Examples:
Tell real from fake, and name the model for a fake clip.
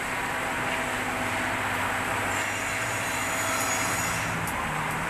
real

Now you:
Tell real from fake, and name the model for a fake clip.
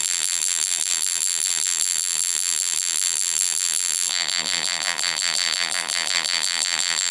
fake, vocoder, BigVGAN v2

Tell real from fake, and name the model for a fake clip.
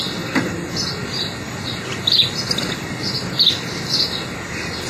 real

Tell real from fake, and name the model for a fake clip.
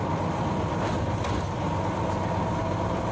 real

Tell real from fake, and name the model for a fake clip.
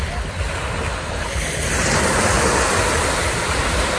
real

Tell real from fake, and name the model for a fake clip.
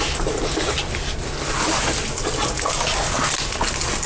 real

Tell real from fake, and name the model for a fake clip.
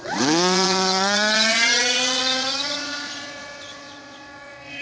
fake, vocoder, Vocos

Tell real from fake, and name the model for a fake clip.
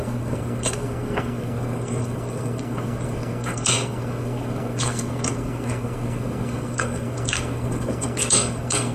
fake, codec, SNAC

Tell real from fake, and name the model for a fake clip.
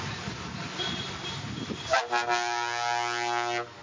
real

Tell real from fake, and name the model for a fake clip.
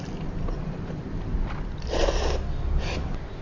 real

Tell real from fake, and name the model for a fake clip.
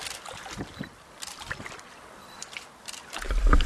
real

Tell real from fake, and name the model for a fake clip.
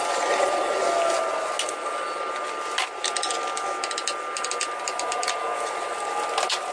real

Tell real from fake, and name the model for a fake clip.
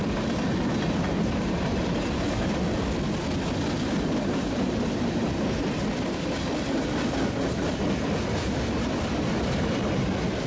real